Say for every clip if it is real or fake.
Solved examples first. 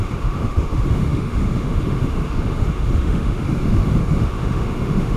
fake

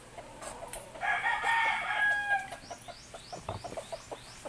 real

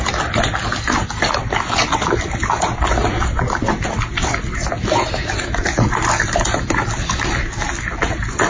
real